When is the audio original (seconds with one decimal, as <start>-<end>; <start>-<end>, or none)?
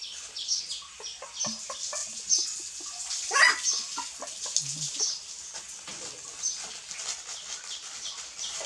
0.6-8.7